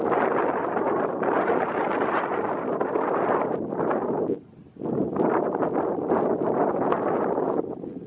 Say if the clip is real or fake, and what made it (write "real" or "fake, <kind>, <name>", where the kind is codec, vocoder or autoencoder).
real